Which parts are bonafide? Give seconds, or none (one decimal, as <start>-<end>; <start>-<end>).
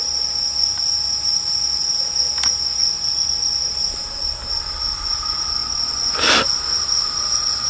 0.0-5.6; 6.2-7.7